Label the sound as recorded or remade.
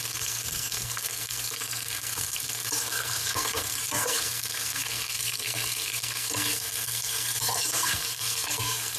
remade